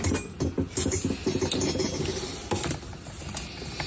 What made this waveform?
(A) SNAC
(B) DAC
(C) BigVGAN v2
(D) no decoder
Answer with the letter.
D